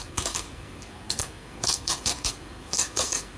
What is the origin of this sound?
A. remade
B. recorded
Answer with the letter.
A